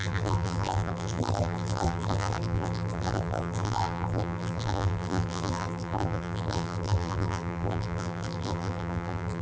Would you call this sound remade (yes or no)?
yes